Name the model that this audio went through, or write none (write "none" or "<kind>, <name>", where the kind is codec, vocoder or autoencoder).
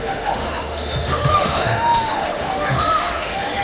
autoencoder, DAC-VAE